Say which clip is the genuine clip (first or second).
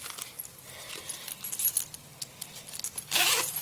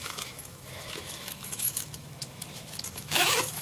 first